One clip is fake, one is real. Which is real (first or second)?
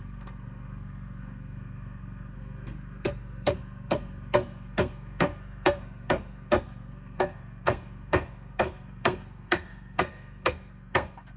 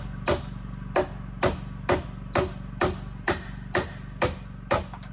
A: second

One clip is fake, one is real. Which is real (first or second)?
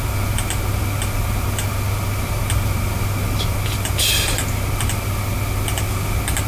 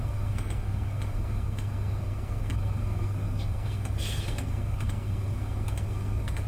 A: first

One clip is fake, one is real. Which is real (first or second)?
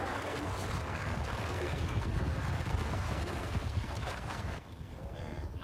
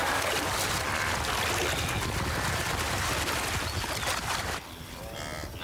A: second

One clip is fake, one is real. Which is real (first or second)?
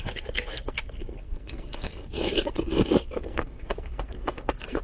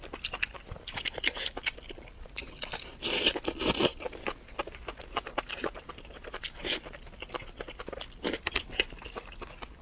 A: second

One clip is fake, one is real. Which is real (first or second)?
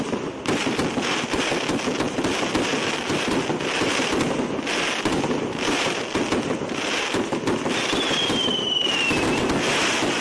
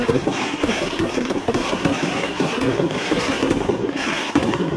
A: first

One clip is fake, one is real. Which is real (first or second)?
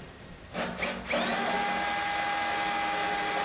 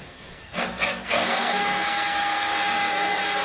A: first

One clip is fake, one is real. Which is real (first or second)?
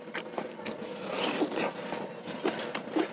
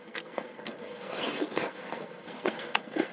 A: first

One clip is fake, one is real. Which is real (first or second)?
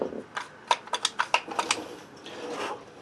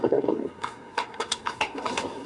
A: first